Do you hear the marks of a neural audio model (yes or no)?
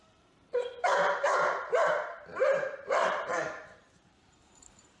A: yes